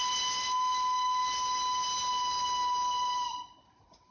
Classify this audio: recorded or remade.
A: recorded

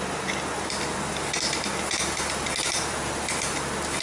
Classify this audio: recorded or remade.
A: recorded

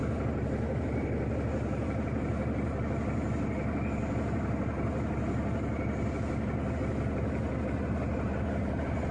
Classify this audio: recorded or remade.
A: recorded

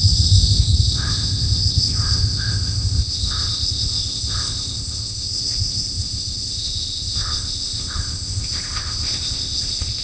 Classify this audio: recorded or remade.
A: remade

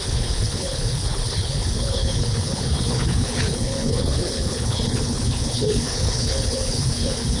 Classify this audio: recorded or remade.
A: remade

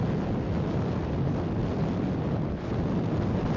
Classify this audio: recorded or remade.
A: recorded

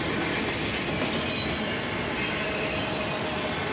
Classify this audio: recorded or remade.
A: recorded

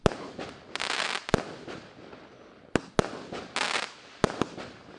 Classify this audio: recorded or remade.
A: recorded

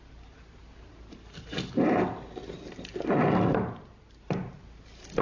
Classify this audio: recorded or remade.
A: recorded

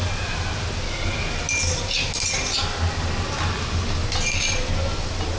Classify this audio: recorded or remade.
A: recorded